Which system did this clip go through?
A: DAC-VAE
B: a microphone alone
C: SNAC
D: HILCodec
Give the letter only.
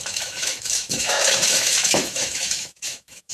A